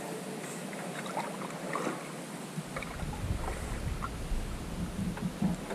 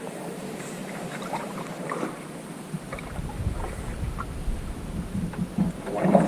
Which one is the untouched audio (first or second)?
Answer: first